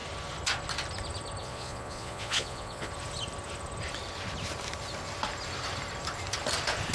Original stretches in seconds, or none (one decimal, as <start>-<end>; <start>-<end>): 0.0-1.4; 2.9-6.9